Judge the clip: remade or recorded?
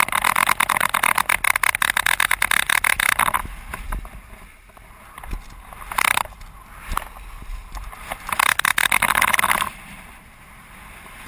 recorded